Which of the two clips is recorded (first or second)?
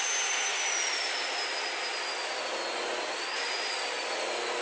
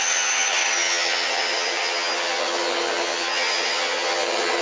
first